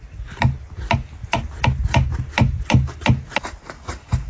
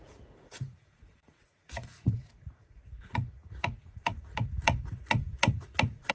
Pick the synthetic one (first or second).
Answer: second